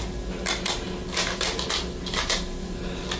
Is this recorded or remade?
recorded